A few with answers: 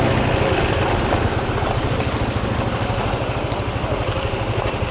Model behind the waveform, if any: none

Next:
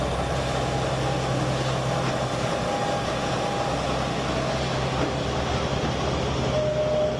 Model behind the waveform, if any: none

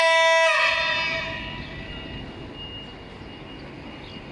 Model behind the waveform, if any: none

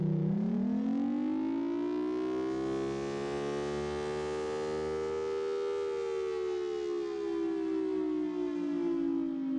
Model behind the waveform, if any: none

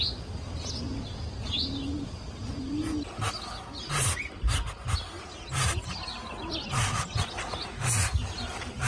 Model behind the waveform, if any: none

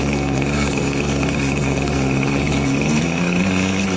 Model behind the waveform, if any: codec, SNAC